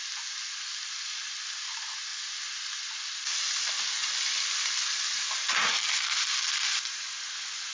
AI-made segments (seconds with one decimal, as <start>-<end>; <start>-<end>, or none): none